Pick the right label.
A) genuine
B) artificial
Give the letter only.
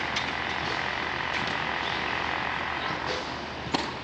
A